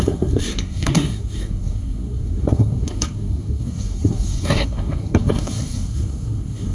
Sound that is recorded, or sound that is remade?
remade